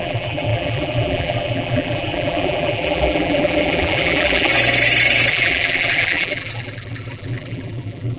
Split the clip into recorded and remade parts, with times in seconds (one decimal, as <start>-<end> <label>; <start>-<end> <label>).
0.0-4.5 remade; 4.5-5.3 recorded; 5.3-8.2 remade